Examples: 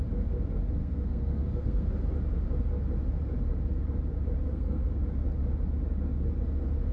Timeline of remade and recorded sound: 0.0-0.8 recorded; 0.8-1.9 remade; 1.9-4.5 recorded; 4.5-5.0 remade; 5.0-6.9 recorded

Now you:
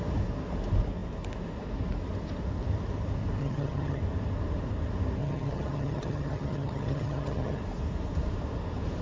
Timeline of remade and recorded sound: 0.0-3.4 recorded; 3.4-4.0 remade; 4.0-5.2 recorded; 5.2-7.6 remade; 7.6-9.0 recorded

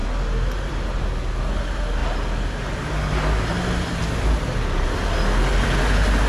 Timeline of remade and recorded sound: 0.0-6.3 recorded

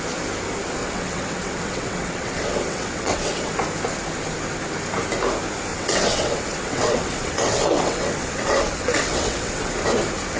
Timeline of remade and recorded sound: 0.0-0.8 recorded; 0.8-3.5 remade; 3.5-5.7 recorded; 5.7-9.7 remade; 9.7-10.4 recorded

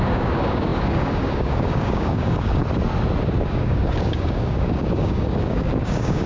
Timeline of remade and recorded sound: 0.0-2.6 remade; 2.6-3.2 recorded; 3.2-6.3 remade

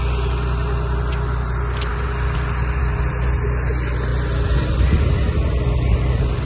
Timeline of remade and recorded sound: 0.0-6.5 recorded

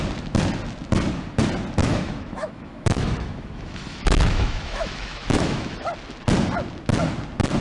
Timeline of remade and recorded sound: 0.0-1.8 recorded; 1.8-5.9 remade; 5.9-7.6 recorded

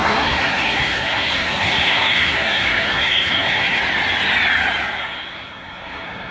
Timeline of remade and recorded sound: 0.0-3.8 remade; 3.8-5.0 recorded; 5.0-6.3 remade